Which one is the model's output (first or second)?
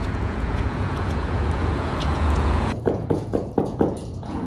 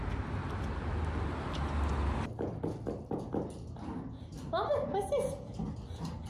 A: first